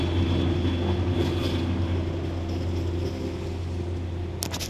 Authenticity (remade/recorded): recorded